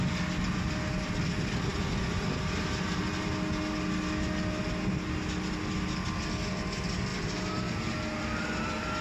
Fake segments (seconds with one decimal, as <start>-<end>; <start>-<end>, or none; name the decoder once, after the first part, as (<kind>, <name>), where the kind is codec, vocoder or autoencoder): none